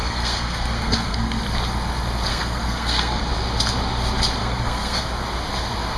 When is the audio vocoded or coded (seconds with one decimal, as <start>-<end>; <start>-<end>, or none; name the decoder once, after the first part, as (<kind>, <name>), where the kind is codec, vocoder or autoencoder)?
0.0-1.4 (codec, SNAC); 2.3-3.2; 4.4-5.0